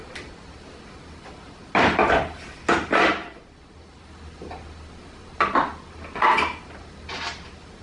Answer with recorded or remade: recorded